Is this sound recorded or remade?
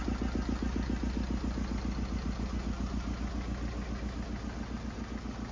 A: recorded